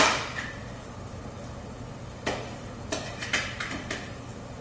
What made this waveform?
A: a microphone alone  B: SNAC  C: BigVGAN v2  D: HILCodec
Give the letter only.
A